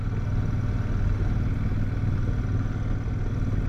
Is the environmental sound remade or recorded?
recorded